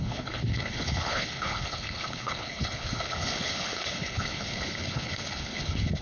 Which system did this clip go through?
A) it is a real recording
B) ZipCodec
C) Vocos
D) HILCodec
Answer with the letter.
D